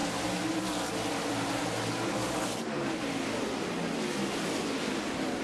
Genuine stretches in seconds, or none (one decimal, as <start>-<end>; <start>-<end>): 0.0-5.4